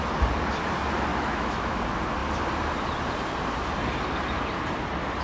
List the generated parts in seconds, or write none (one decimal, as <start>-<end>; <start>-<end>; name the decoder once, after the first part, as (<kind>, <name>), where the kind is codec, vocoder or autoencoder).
1.1-1.8 (autoencoder, DAC-VAE)

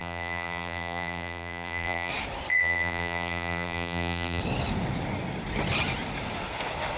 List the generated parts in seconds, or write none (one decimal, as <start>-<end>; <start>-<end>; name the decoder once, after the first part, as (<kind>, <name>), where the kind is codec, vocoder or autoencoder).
0.0-2.1 (vocoder, BigVGAN v2); 2.5-4.4

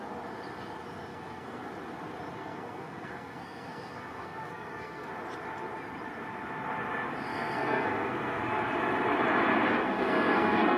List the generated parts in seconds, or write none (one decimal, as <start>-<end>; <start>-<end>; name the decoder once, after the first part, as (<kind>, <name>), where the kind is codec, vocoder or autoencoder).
1.1-1.7 (codec, SNAC); 2.4-5.1; 7.3-8.4; 9.8-10.8

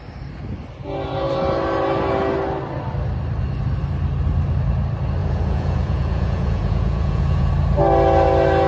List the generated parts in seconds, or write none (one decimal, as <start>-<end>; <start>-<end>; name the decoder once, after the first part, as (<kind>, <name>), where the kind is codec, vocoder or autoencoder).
5.2-7.5 (vocoder, Vocos)

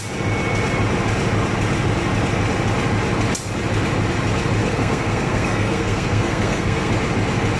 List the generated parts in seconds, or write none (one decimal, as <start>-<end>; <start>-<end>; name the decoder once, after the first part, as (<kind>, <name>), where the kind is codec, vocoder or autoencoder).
4.6-6.9 (codec, SNAC)

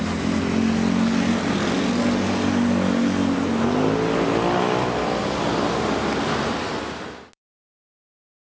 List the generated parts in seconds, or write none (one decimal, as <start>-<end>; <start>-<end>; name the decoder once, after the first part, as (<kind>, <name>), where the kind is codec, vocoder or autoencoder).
none